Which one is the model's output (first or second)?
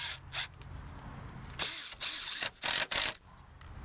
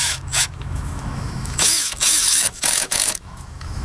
second